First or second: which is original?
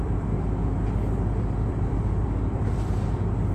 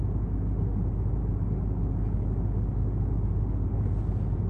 second